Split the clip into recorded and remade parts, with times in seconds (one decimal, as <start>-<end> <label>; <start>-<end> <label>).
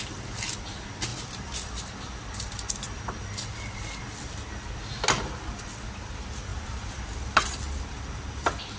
0.0-1.1 recorded; 1.1-4.0 remade; 4.0-6.5 recorded; 6.5-7.1 remade; 7.1-8.8 recorded